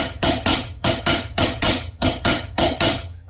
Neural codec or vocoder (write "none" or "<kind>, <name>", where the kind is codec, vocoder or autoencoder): vocoder, HiFi-GAN